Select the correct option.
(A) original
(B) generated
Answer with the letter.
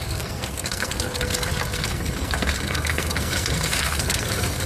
B